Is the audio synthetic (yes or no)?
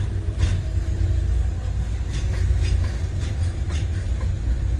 no